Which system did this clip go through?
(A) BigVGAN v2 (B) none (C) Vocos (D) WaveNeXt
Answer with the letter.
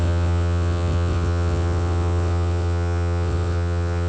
D